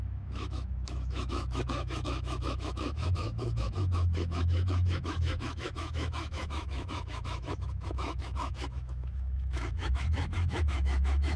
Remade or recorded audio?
remade